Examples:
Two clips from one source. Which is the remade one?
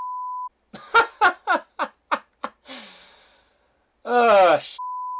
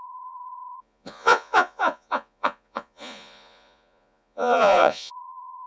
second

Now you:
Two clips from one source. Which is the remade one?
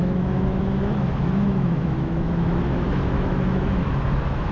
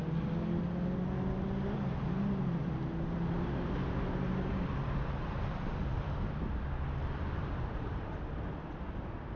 first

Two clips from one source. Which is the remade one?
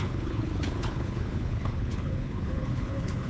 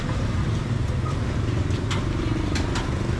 first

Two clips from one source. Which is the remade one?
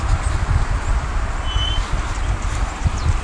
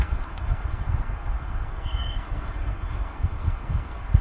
second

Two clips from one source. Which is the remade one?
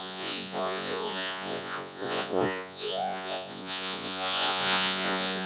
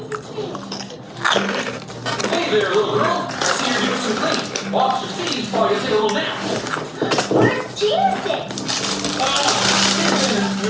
first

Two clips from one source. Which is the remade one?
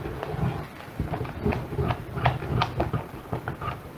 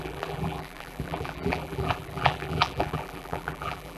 second